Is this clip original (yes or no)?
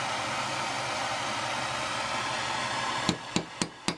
yes